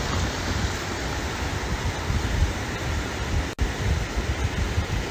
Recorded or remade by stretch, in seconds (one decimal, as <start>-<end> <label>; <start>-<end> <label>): 0.0-2.4 recorded; 2.4-3.1 remade; 3.1-5.1 recorded